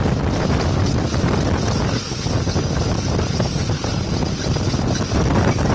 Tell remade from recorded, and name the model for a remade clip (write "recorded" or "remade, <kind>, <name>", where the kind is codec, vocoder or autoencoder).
recorded